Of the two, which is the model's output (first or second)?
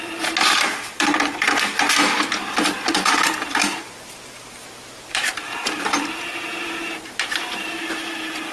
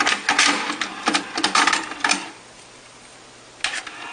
first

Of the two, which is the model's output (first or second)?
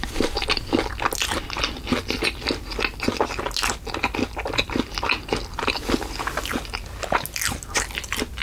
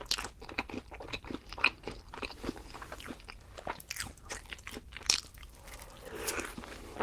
second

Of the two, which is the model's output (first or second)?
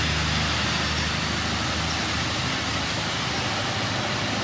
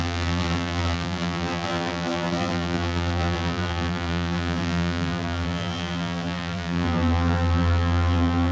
second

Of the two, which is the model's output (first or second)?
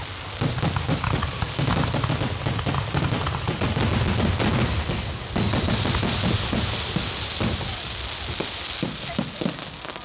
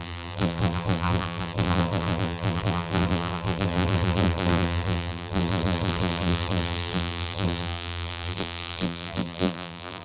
second